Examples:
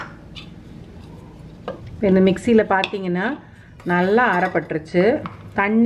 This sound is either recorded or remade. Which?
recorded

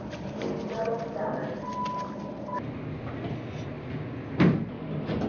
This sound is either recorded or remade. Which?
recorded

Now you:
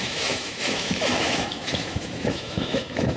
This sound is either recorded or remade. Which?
remade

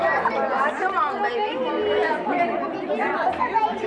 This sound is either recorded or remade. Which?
recorded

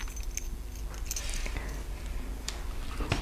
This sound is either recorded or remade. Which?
recorded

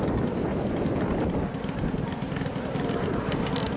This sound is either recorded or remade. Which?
recorded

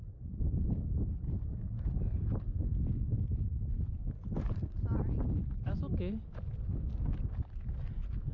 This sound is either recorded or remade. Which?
recorded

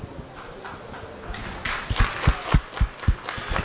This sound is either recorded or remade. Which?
recorded